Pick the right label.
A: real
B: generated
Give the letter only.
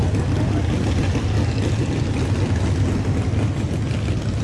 A